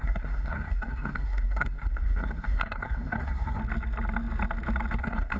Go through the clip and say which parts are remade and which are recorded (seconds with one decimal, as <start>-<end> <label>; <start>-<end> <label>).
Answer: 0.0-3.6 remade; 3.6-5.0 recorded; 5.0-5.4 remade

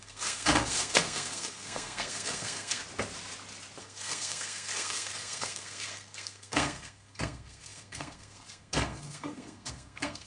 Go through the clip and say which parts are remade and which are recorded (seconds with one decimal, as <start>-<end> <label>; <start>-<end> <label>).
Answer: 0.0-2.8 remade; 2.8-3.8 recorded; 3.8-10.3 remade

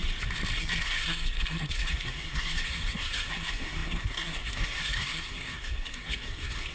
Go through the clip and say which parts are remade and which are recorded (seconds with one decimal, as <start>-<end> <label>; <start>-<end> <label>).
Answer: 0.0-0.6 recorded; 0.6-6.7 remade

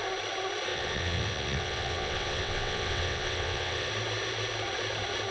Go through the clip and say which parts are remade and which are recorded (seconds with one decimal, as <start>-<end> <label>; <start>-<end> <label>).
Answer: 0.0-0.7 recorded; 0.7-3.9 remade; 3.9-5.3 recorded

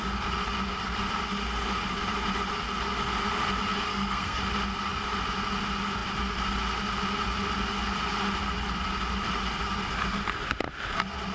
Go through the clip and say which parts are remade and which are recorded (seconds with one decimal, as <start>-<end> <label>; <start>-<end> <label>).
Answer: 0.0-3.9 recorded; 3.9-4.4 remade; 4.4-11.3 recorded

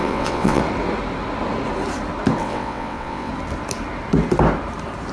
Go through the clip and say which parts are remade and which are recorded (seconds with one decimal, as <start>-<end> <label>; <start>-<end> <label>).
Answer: 0.0-0.6 remade; 0.6-2.4 recorded; 2.4-3.3 remade; 3.3-5.1 recorded